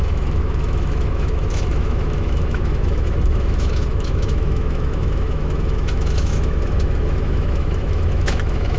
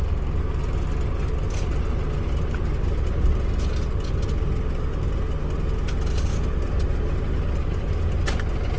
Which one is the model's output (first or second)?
first